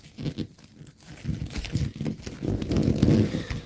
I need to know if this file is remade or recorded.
recorded